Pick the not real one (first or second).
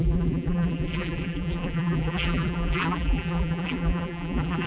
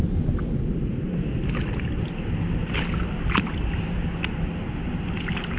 first